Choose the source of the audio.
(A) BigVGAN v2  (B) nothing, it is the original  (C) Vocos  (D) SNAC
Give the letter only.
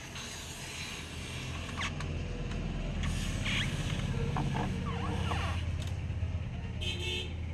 B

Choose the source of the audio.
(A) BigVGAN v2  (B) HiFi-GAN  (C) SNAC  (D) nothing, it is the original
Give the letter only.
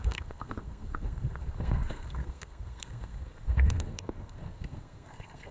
C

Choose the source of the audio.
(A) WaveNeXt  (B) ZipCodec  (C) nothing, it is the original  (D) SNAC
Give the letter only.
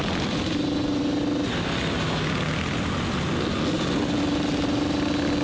C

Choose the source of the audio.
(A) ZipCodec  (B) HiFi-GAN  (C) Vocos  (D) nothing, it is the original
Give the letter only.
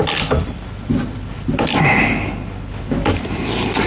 D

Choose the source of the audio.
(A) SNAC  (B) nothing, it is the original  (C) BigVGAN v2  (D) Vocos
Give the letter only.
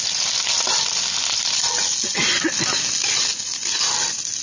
B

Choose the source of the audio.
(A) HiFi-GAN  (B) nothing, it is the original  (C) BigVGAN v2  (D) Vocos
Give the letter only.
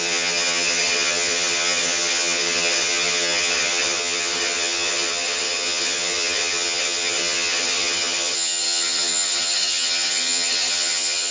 A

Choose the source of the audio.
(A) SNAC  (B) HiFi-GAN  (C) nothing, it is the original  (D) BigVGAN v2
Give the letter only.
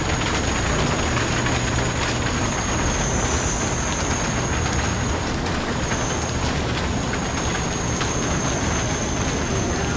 C